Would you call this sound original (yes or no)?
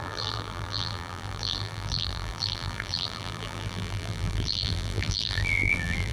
no